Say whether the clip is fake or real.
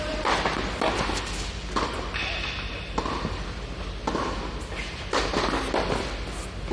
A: real